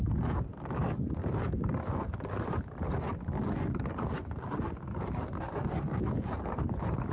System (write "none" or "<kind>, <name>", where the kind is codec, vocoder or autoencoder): none